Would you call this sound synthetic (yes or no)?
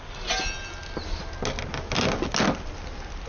no